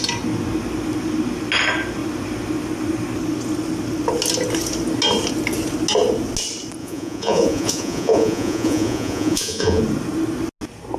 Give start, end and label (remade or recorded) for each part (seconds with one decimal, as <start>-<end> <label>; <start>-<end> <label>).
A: 0.0-6.8 recorded; 6.8-9.8 remade; 9.8-11.0 recorded